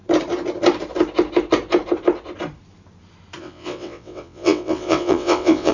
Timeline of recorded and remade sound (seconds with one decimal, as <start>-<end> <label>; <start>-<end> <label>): 0.0-3.4 recorded; 3.4-5.7 remade